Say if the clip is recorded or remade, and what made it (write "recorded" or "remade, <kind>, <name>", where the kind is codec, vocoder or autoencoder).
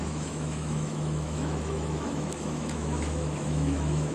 remade, autoencoder, DAC-VAE